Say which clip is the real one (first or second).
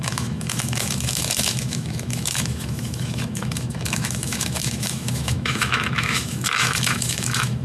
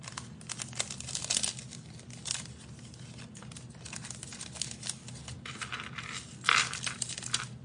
second